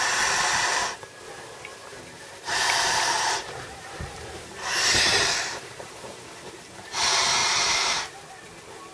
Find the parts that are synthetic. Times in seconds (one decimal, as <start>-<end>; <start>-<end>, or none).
1.7-6.5; 7.4-8.3